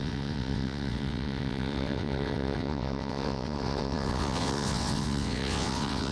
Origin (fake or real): fake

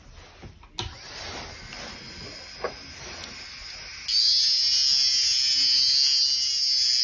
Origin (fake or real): real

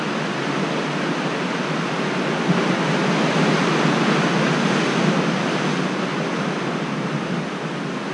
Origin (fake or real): real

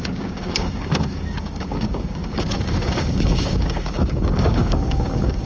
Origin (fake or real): fake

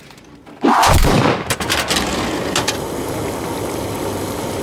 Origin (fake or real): real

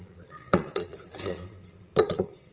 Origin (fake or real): fake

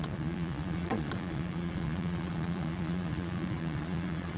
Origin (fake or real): fake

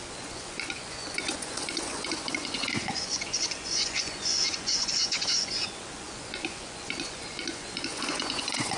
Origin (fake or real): fake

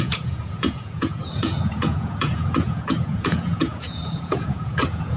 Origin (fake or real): fake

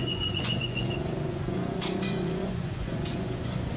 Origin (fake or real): fake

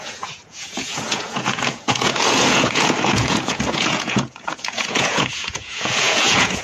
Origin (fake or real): fake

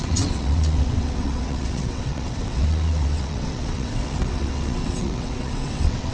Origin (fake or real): fake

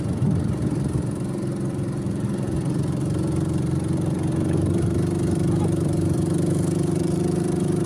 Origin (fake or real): fake